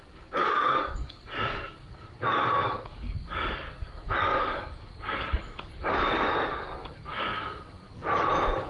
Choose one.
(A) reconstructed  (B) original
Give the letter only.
A